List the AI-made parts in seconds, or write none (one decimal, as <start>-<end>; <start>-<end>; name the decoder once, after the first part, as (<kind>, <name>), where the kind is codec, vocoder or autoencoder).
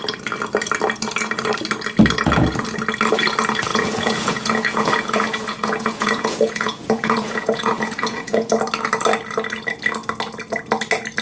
3.7-8.5 (vocoder, Vocos)